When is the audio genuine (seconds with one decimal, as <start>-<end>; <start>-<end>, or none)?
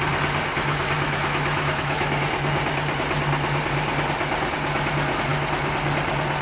0.0-0.7; 2.2-6.4